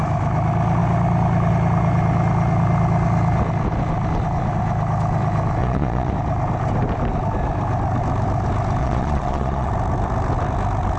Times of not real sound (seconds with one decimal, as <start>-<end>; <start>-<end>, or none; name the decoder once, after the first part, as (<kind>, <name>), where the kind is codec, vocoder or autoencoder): 5.6-6.1 (vocoder, Vocos); 8.8-9.7